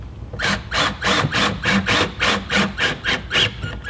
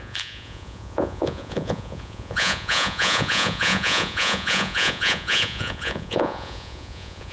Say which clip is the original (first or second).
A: first